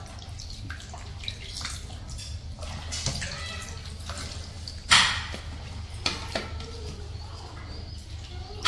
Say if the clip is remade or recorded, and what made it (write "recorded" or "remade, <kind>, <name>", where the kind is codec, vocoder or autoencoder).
recorded